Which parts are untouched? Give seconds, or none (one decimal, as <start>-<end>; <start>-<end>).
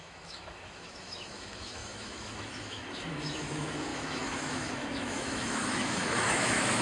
none